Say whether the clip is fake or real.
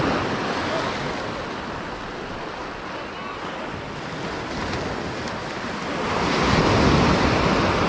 real